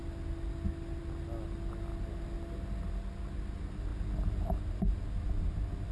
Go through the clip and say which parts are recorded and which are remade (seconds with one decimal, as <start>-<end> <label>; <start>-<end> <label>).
0.0-5.9 recorded